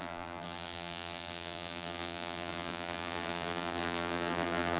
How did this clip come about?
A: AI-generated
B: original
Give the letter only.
A